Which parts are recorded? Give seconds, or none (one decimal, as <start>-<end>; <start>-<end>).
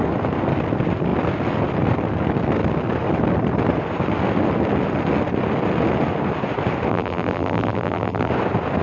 0.0-6.9; 8.3-8.8